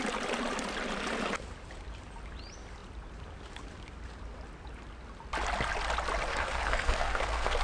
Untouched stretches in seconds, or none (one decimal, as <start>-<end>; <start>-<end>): 0.0-6.3